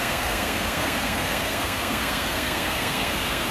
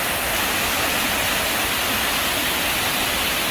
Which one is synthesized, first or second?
first